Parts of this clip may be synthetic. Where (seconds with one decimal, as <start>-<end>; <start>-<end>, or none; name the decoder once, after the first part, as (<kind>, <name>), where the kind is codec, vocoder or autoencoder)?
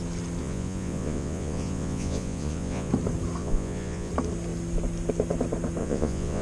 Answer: 0.4-2.9 (vocoder, Vocos); 3.4-4.1; 5.8-6.4